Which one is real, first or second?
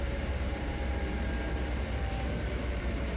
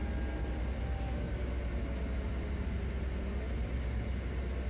second